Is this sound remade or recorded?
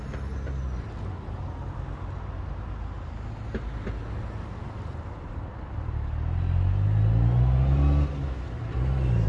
recorded